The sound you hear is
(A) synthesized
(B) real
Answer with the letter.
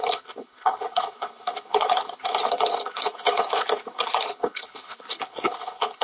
A